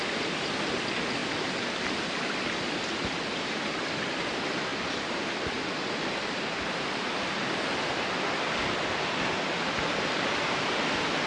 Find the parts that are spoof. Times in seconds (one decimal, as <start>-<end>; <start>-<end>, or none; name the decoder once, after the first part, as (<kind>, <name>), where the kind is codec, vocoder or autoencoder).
none